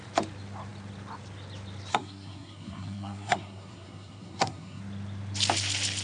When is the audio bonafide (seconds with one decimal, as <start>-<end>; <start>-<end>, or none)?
0.0-1.9; 4.8-6.0